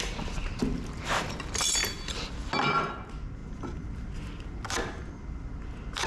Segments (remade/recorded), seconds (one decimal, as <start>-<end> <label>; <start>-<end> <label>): 0.0-0.4 recorded; 0.4-1.0 remade; 1.0-6.1 recorded